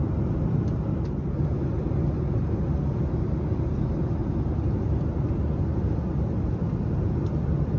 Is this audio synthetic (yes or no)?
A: no